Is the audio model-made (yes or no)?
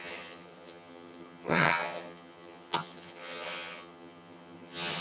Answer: yes